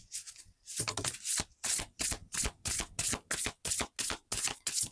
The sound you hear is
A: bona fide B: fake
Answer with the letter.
A